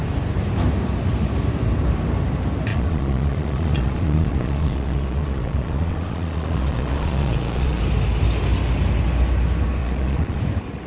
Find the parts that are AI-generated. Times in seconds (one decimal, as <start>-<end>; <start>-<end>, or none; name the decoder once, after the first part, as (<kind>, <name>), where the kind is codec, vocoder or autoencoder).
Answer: 2.7-7.8 (vocoder, Vocos); 9.8-10.4